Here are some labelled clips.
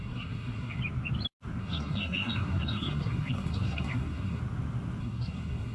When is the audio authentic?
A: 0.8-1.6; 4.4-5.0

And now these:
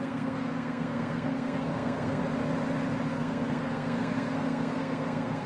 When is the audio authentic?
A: 2.2-3.1